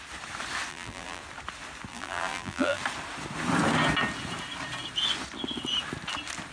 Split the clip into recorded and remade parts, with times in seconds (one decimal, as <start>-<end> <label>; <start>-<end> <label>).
0.0-0.7 recorded; 0.7-1.2 remade; 1.2-1.9 recorded; 1.9-2.8 remade; 2.8-6.5 recorded